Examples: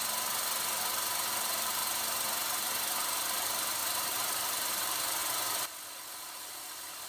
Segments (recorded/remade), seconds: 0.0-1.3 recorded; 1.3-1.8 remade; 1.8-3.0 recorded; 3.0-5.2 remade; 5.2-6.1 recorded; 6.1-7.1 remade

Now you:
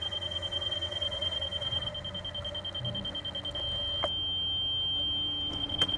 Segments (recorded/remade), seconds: 0.0-1.9 remade; 1.9-5.5 recorded; 5.5-6.0 remade